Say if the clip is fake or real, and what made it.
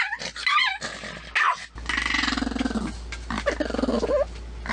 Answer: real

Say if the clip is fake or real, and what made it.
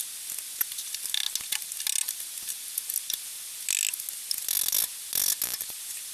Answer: real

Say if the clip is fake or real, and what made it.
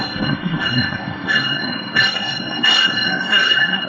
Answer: fake, codec, SNAC